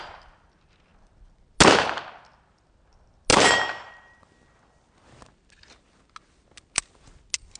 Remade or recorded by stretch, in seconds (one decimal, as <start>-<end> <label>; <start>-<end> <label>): 0.0-3.3 recorded; 3.3-4.3 remade; 4.3-7.6 recorded